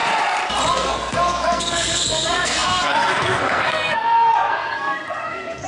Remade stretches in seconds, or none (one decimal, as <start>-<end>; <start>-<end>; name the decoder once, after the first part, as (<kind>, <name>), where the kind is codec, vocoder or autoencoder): 0.7-5.7 (codec, SNAC)